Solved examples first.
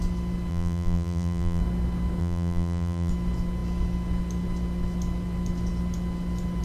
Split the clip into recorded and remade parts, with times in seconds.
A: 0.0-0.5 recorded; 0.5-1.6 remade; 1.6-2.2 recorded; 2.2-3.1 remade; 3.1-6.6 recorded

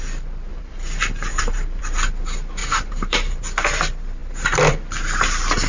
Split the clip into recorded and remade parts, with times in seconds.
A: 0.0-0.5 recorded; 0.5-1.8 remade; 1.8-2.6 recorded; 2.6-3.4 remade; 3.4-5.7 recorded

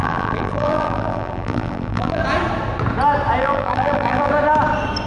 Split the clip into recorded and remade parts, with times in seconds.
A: 0.0-2.2 remade; 2.2-3.4 recorded; 3.4-4.3 remade; 4.3-5.1 recorded

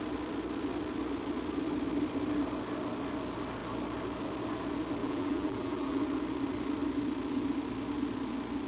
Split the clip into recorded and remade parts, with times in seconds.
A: 0.0-5.0 recorded; 5.0-6.0 remade; 6.0-8.7 recorded

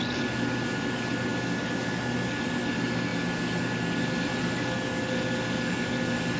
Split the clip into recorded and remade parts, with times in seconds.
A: 0.0-6.4 recorded

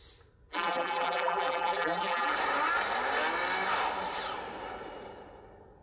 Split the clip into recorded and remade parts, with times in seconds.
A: 0.0-0.5 recorded; 0.5-2.3 remade; 2.3-5.8 recorded